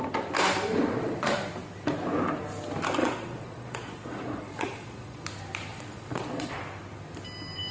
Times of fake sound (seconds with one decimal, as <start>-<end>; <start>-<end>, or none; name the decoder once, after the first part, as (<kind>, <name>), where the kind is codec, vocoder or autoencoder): 0.9-1.5 (vocoder, Vocos); 3.0-5.2; 5.7-6.6